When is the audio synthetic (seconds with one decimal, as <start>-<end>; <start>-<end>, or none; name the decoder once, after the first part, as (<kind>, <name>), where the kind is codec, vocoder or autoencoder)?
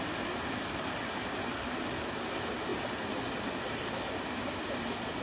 none